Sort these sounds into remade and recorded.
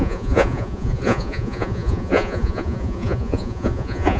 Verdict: remade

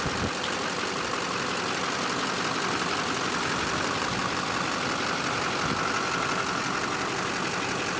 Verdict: recorded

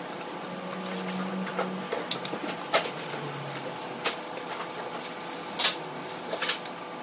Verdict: recorded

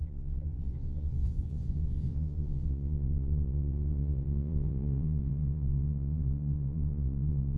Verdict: remade